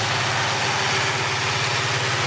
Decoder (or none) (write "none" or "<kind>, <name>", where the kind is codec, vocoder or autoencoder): none